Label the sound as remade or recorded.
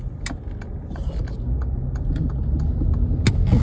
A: recorded